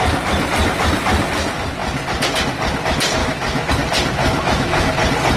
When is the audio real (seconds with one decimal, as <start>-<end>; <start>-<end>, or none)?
0.0-3.2; 3.7-4.2; 4.9-5.4